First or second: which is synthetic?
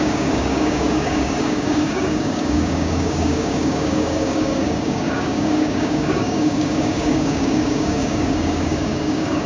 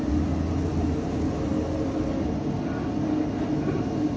first